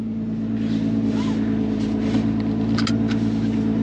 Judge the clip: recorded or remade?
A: recorded